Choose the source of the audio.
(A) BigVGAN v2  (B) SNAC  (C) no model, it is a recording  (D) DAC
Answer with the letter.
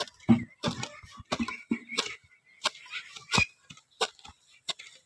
C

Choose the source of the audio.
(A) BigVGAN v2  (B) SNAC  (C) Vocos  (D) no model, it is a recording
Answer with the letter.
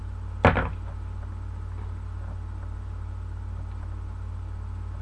D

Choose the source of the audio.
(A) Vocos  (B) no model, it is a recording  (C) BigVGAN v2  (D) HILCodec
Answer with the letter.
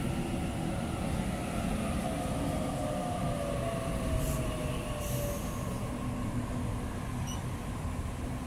B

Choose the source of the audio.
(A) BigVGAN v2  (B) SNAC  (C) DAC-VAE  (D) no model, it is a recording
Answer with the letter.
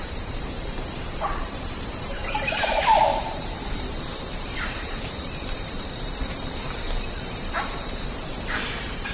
A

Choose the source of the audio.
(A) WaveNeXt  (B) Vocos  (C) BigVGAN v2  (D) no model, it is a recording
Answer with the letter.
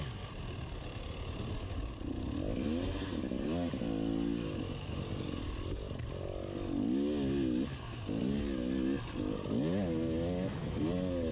D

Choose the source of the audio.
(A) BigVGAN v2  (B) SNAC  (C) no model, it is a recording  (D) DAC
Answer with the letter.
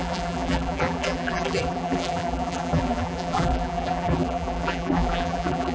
A